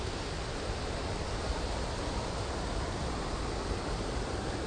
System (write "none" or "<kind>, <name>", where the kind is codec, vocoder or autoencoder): none